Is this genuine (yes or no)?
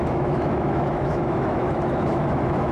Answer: no